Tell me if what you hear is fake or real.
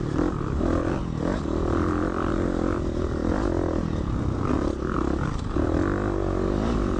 real